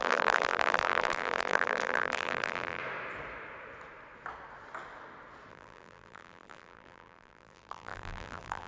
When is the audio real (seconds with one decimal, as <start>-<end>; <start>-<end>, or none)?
2.8-5.5